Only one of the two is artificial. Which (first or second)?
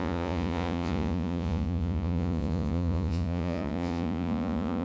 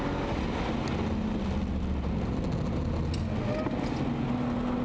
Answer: first